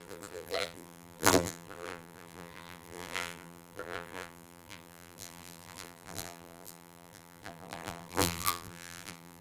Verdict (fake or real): fake